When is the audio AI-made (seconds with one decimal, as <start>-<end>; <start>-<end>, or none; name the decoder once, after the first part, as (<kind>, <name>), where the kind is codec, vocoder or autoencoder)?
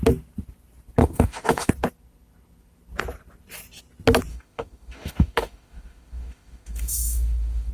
1.0-1.7 (autoencoder, DAC-VAE); 4.3-7.7